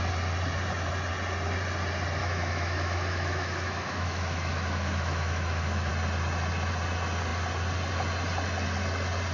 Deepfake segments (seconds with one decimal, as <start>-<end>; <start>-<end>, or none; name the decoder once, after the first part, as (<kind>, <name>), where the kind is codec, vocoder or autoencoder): 2.2-5.9 (autoencoder, DAC-VAE)

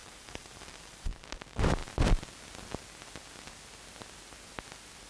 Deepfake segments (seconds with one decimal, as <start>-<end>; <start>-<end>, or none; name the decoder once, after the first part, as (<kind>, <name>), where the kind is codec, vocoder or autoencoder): 0.0-1.2 (vocoder, BigVGAN v2)

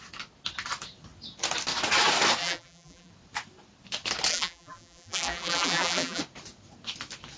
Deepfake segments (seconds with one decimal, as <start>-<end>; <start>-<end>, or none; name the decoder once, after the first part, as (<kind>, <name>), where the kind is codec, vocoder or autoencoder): 2.4-3.1 (vocoder, BigVGAN v2); 4.3-6.2

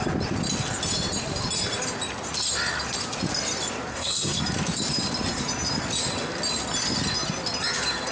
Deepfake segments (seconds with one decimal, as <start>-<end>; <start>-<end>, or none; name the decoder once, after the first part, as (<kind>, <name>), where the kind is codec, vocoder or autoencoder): 3.9-4.4 (codec, SNAC)

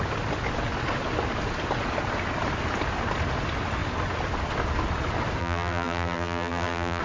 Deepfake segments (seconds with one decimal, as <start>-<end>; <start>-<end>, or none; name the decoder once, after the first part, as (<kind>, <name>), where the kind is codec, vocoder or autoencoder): 5.4-7.0 (vocoder, BigVGAN v2)

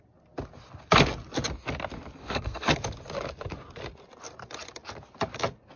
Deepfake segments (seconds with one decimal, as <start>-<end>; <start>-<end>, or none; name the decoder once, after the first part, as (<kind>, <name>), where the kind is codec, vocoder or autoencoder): 2.2-2.7 (codec, SNAC)